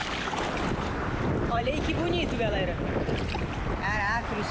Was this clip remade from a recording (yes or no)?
no